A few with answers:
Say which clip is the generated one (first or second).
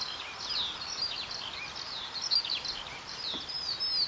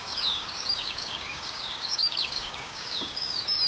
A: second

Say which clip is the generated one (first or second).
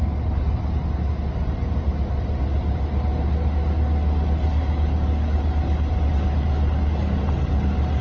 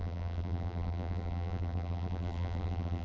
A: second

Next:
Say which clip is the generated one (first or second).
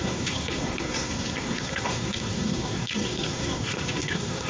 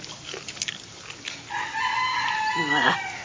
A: first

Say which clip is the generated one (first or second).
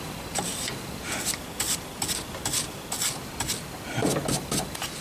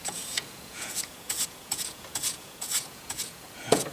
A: second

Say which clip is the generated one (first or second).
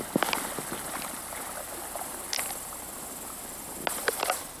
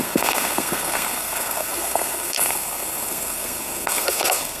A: second